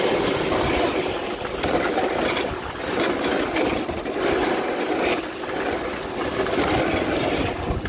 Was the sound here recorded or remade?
recorded